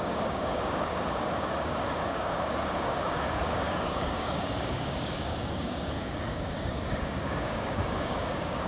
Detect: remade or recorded remade